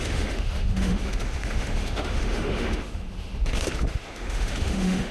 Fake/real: fake